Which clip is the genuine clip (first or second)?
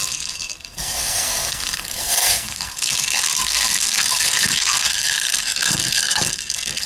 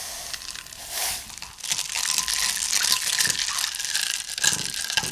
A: second